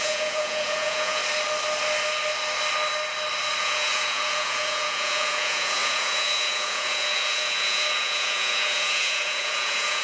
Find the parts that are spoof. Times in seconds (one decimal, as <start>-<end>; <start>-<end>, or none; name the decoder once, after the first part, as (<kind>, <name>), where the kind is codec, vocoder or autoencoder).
0.0-1.2 (vocoder, Vocos); 3.6-10.0